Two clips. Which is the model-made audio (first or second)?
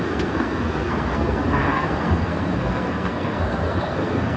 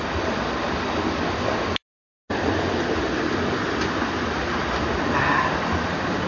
first